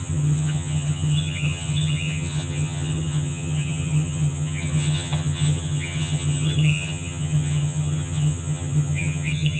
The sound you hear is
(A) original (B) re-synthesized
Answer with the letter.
B